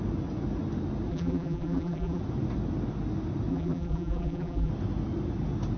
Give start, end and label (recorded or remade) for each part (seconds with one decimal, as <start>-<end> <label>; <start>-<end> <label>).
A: 0.0-1.1 recorded; 1.1-2.2 remade; 2.2-3.5 recorded; 3.5-4.7 remade; 4.7-5.8 recorded